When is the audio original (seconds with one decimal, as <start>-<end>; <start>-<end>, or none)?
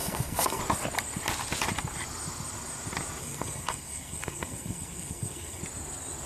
0.6-3.2; 5.6-6.3